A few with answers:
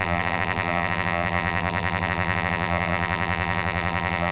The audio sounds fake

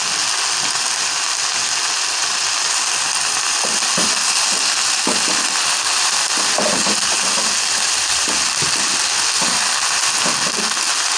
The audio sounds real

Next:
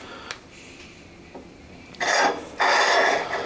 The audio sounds real